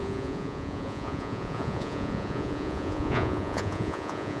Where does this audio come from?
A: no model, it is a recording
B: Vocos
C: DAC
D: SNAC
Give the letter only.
B